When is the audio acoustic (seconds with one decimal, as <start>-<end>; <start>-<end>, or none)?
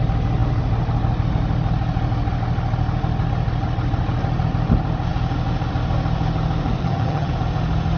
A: 0.0-6.8; 7.3-8.0